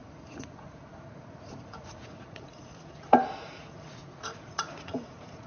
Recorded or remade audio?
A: remade